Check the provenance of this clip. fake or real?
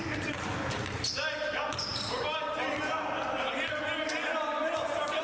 real